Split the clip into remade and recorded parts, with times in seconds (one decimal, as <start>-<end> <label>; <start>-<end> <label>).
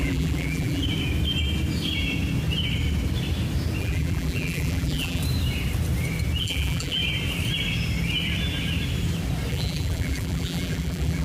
0.0-0.8 remade; 0.8-3.8 recorded; 3.8-5.2 remade; 5.2-6.4 recorded; 6.4-7.0 remade; 7.0-9.5 recorded; 9.5-11.2 remade